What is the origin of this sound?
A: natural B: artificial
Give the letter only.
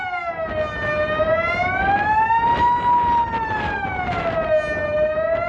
A